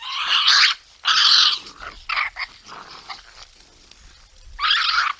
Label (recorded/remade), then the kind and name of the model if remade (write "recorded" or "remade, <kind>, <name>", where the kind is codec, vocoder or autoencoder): recorded